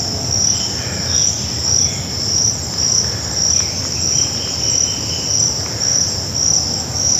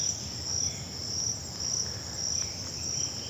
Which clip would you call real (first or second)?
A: first